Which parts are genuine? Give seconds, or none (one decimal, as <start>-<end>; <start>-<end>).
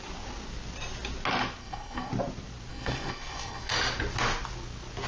0.0-1.6; 2.1-2.7; 3.7-5.1